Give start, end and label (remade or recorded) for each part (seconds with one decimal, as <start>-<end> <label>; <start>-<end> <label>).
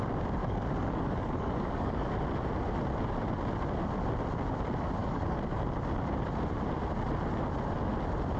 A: 0.0-0.4 recorded; 0.4-2.1 remade; 2.1-5.0 recorded; 5.0-5.6 remade; 5.6-8.4 recorded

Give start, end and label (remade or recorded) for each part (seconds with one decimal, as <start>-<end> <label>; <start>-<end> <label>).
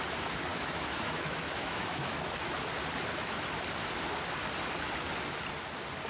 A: 0.0-0.5 recorded; 0.5-2.5 remade; 2.5-3.1 recorded; 3.1-3.6 remade; 3.6-6.1 recorded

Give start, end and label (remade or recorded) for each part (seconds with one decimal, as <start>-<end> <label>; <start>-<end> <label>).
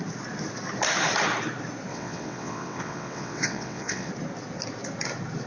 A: 0.0-1.9 recorded; 1.9-4.1 remade; 4.1-5.5 recorded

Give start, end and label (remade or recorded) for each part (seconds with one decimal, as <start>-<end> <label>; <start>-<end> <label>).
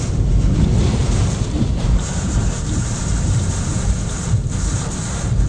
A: 0.0-1.0 recorded; 1.0-4.3 remade; 4.3-5.5 recorded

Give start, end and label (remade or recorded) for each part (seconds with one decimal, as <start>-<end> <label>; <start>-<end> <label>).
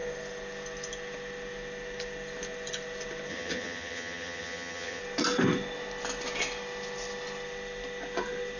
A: 0.0-3.3 recorded; 3.3-5.0 remade; 5.0-8.6 recorded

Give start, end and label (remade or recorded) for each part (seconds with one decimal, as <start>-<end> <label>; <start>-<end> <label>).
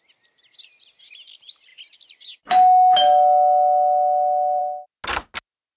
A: 0.0-5.8 recorded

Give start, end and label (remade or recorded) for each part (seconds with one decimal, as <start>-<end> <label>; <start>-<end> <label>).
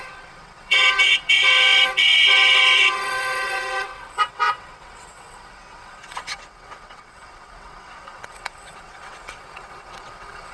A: 0.0-10.5 remade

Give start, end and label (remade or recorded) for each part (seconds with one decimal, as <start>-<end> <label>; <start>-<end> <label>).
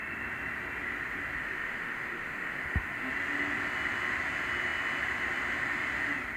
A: 0.0-1.4 recorded; 1.4-3.1 remade; 3.1-6.4 recorded